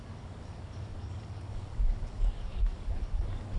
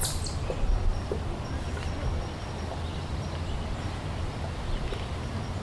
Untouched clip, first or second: second